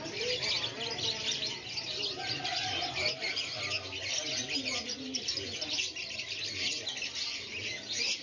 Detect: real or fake real